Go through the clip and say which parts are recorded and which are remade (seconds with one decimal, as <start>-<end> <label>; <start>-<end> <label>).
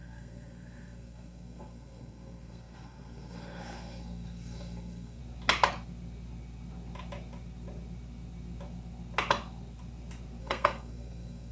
0.0-5.2 remade; 5.2-10.4 recorded; 10.4-11.5 remade